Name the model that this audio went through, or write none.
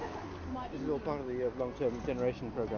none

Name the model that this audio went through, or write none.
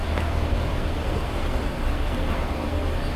codec, SNAC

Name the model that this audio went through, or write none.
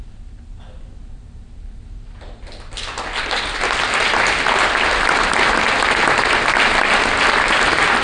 none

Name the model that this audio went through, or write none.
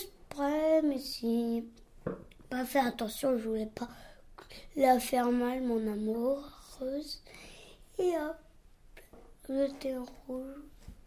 none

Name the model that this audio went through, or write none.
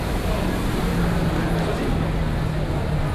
none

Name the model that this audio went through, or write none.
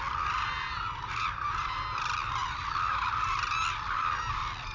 none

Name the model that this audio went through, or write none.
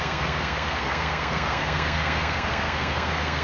codec, SNAC